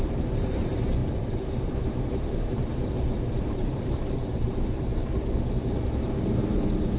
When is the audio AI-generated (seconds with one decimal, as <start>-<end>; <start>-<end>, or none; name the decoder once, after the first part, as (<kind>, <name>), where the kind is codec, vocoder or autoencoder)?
0.0-1.0 (vocoder, BigVGAN v2); 1.7-4.9; 5.6-7.0